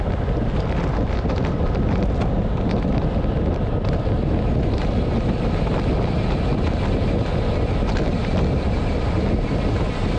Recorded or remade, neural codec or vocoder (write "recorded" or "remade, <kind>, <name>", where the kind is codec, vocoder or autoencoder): recorded